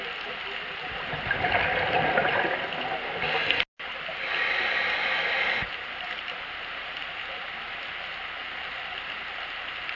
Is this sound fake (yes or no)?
no